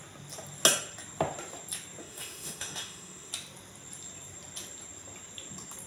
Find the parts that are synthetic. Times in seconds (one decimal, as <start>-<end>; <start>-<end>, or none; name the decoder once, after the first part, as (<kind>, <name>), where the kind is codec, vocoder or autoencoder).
2.0-3.3 (autoencoder, DAC-VAE)